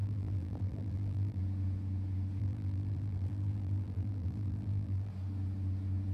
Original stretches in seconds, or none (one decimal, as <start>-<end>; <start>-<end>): 1.4-2.4; 5.1-6.1